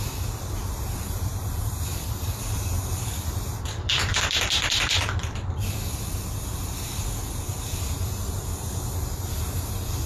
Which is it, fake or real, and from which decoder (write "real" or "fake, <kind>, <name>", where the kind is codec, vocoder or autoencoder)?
fake, vocoder, BigVGAN v2